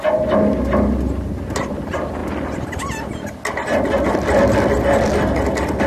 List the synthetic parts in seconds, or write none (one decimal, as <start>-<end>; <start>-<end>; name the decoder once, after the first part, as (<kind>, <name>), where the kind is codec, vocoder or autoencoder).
none